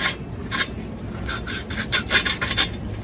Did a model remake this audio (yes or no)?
no